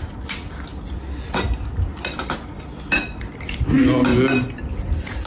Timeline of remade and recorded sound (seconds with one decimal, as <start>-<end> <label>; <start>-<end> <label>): 0.0-5.3 recorded